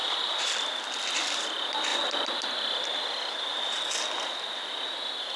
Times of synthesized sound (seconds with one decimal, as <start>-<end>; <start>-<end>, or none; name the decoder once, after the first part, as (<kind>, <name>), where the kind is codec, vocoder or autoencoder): none